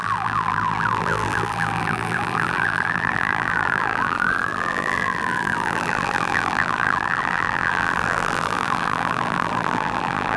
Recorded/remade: remade